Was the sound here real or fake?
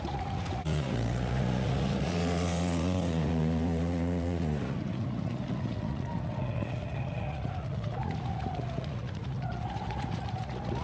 fake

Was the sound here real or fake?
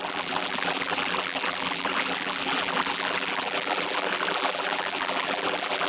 fake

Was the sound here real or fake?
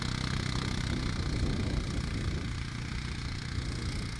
real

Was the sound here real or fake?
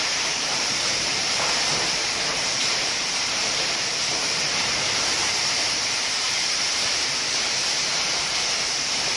fake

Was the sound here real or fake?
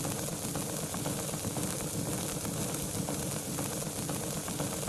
real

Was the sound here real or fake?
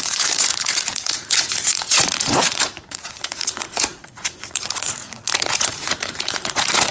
fake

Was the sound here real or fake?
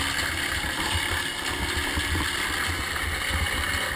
real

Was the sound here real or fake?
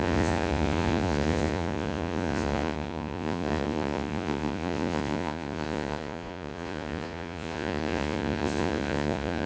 fake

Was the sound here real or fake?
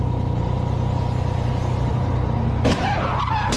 real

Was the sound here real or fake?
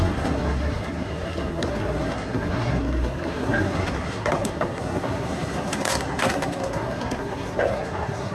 fake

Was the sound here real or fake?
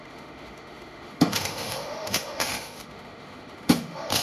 fake